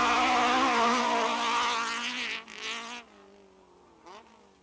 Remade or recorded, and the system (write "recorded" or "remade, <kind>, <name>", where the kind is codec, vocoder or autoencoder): recorded